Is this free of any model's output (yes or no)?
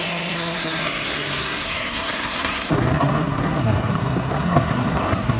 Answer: no